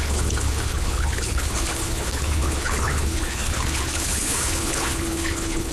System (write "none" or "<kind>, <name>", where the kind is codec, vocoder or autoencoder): codec, HILCodec